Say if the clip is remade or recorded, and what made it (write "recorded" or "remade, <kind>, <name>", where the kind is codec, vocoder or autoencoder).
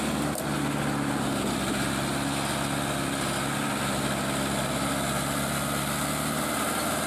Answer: recorded